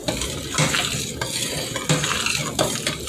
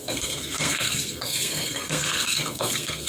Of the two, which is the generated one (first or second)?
second